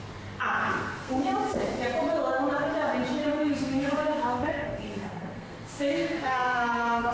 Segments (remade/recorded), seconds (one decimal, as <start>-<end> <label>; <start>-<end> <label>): 0.0-0.6 recorded; 0.6-1.2 remade; 1.2-3.2 recorded; 3.2-7.1 remade